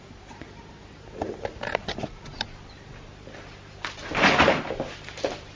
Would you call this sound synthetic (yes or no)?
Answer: no